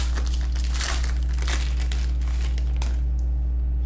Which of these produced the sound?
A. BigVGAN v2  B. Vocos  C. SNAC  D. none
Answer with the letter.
D